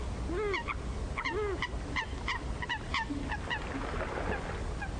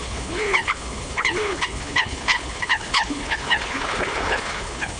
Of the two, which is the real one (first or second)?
first